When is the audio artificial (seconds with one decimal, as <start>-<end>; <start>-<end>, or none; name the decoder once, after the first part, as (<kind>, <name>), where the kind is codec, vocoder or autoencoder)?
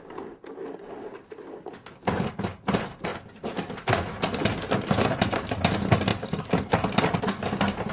none